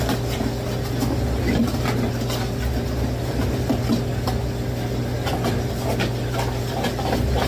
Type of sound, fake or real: real